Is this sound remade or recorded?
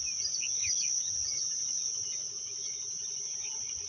recorded